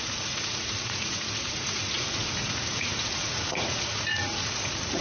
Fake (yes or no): yes